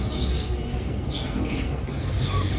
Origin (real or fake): fake